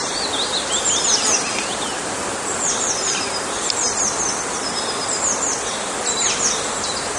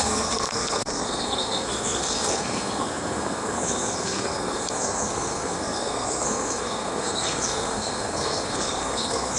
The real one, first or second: first